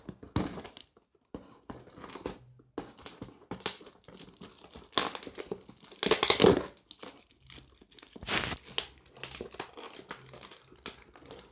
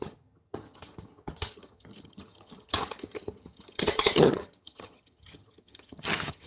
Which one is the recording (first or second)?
first